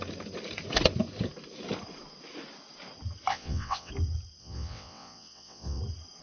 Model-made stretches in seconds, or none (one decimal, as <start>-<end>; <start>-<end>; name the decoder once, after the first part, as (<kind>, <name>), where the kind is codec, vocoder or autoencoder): 3.3-3.9 (vocoder, WaveNeXt); 4.4-5.8